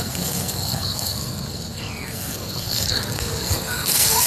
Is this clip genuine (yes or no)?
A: no